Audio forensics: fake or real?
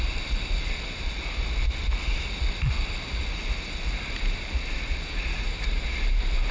real